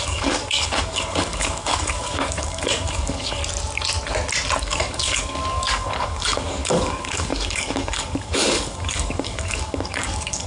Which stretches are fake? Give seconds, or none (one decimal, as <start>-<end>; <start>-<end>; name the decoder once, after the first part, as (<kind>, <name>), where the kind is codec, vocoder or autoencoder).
0.0-3.4 (codec, DAC); 4.6-10.5